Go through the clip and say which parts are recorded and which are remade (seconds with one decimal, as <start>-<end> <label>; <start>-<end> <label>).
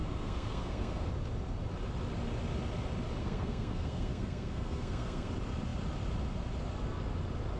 0.0-1.1 remade; 1.1-3.2 recorded; 3.2-5.3 remade; 5.3-7.6 recorded